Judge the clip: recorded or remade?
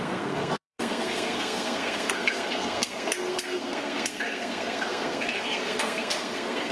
remade